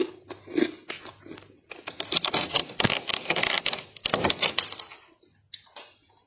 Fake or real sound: real